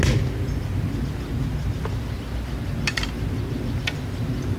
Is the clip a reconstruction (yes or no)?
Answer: no